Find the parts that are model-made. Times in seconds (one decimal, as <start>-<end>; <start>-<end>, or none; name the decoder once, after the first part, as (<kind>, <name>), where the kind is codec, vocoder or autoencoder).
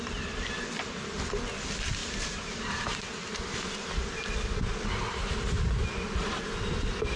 2.0-2.9 (vocoder, BigVGAN v2)